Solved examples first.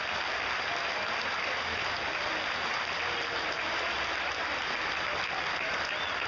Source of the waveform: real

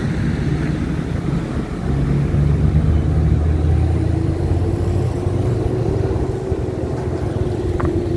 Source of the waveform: real